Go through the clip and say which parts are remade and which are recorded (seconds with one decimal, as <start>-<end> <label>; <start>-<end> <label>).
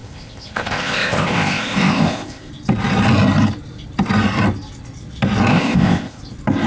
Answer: 0.0-2.5 remade; 2.5-5.5 recorded; 5.5-6.2 remade; 6.2-6.7 recorded